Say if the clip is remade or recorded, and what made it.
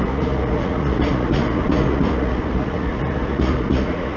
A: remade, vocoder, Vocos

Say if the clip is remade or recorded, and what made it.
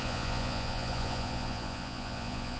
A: remade, vocoder, Vocos